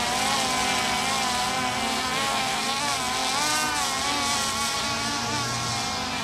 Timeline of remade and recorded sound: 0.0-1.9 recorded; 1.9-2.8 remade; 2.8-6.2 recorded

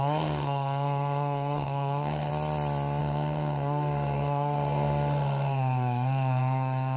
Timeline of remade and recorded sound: 0.0-2.3 remade; 2.3-3.0 recorded; 3.0-7.0 remade

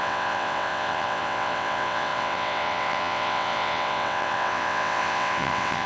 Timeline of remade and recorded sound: 0.0-5.9 remade

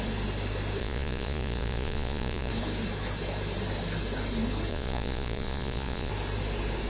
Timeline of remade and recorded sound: 0.0-0.8 recorded; 0.8-2.5 remade; 2.5-4.7 recorded; 4.7-6.1 remade; 6.1-6.9 recorded

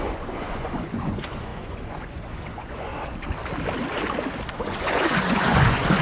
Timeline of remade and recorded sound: 0.0-2.9 remade; 2.9-4.5 recorded; 4.5-6.0 remade